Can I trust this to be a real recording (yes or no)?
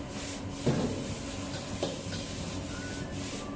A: yes